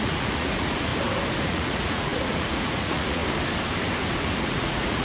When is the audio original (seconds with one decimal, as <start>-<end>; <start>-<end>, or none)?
0.9-1.4; 3.2-4.4